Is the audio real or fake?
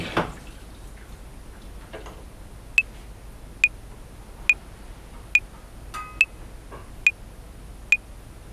real